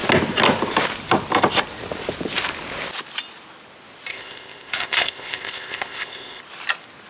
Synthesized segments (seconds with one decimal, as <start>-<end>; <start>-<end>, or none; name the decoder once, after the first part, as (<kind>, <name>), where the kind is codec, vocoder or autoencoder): 4.1-6.4 (codec, ZipCodec)